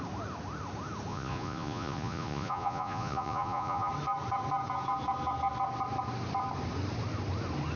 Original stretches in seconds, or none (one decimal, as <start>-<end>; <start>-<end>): 0.0-1.1; 3.9-7.8